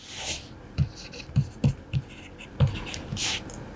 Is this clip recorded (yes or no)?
yes